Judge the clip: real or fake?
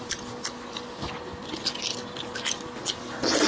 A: real